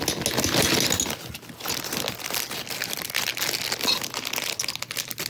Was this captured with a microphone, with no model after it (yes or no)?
yes